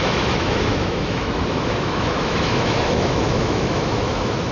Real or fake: fake